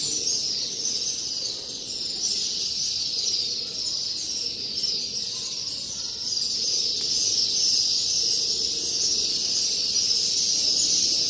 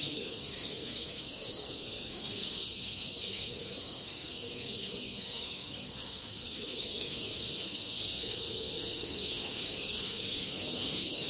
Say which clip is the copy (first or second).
second